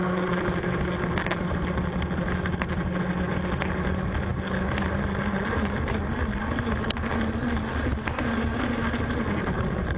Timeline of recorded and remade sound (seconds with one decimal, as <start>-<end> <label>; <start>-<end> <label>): 0.0-10.0 recorded